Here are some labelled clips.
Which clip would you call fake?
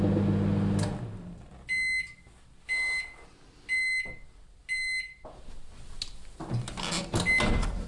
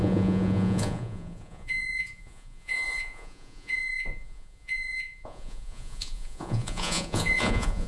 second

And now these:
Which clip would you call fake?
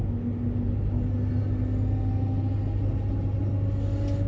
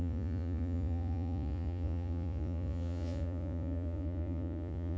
second